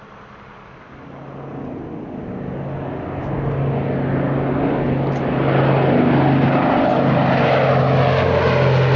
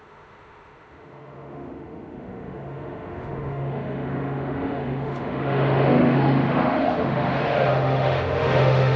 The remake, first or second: second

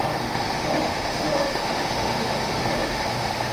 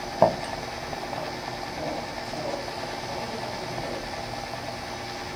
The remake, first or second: first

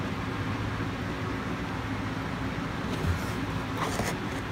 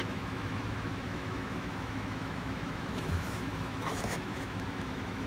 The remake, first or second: second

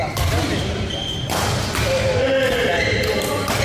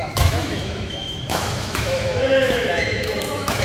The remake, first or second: second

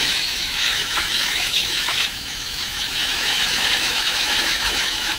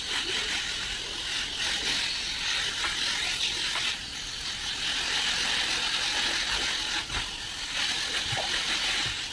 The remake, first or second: first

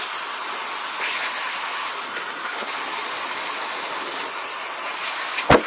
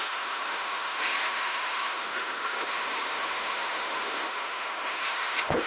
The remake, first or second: second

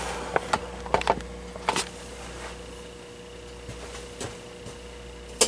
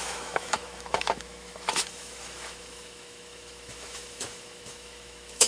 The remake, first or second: second